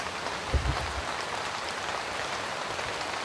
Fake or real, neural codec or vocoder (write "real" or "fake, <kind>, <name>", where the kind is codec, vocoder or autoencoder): fake, vocoder, BigVGAN v2